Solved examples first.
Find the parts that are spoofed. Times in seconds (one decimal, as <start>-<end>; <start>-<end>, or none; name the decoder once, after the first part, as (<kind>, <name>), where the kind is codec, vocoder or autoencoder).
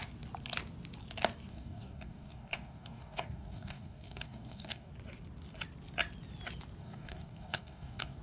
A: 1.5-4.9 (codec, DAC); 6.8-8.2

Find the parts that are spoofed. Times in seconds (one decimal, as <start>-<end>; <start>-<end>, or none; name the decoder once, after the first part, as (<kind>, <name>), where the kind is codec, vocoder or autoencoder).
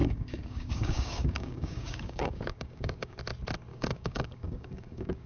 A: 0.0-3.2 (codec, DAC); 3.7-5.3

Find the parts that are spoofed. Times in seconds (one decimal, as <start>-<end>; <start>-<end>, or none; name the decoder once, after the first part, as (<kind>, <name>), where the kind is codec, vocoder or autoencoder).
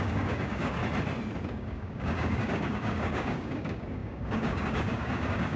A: 0.0-0.8 (codec, DAC); 1.5-5.6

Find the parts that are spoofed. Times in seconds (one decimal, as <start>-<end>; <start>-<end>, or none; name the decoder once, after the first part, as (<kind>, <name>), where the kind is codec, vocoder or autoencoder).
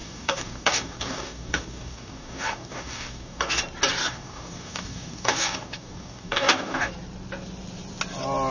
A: 0.0-3.6 (codec, DAC); 4.0-6.9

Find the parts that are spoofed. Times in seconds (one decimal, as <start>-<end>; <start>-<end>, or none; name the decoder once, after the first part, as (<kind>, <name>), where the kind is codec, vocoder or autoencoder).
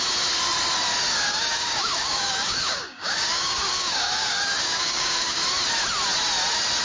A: 1.3-5.4 (codec, DAC)